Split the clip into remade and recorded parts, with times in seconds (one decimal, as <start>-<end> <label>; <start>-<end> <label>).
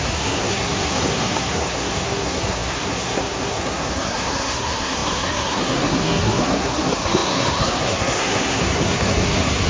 0.0-9.7 remade